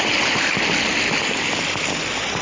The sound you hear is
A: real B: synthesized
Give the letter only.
A